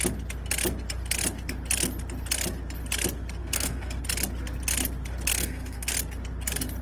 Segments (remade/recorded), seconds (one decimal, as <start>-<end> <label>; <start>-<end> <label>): 0.0-3.4 recorded; 3.4-4.0 remade; 4.0-5.3 recorded; 5.3-5.9 remade; 5.9-6.8 recorded